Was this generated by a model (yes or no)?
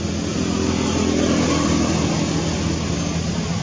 no